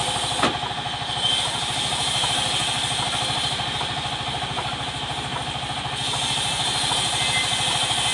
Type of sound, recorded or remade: recorded